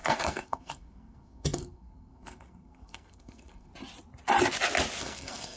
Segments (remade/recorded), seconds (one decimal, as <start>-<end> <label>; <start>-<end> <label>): 0.0-3.7 remade; 3.7-5.0 recorded; 5.0-5.6 remade

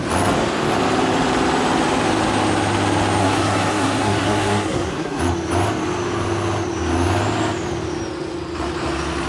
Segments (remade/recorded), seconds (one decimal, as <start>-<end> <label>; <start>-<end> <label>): 0.0-3.2 recorded; 3.2-5.2 remade; 5.2-9.3 recorded

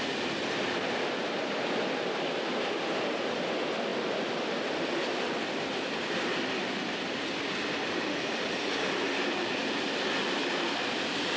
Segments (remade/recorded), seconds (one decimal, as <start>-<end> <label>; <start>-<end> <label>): 0.0-11.4 recorded

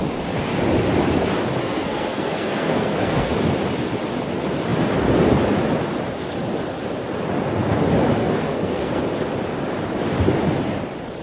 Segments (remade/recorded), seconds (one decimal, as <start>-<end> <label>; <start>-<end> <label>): 0.0-1.6 recorded; 1.6-3.3 remade; 3.3-8.2 recorded; 8.2-9.0 remade; 9.0-11.2 recorded

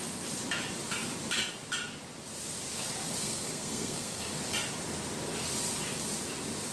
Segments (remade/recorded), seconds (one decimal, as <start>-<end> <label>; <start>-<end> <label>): 0.0-3.2 recorded; 3.2-4.3 remade; 4.3-6.7 recorded

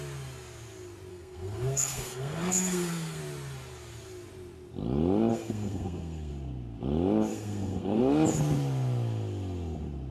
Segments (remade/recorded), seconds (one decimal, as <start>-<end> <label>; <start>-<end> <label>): 0.0-1.1 recorded; 1.1-3.2 remade; 3.2-5.3 recorded; 5.3-6.3 remade; 6.3-7.3 recorded; 7.3-8.0 remade; 8.0-10.1 recorded

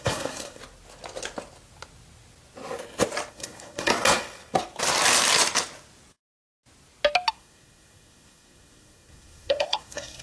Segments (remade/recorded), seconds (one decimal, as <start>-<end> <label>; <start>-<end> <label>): 0.0-0.6 remade; 0.6-3.3 recorded; 3.3-3.9 remade; 3.9-7.3 recorded; 7.3-10.2 remade